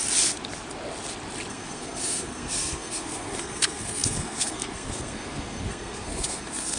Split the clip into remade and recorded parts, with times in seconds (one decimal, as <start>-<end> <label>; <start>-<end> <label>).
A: 0.0-1.5 recorded; 1.5-6.8 remade